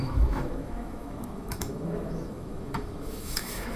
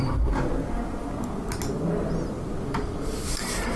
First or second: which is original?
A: second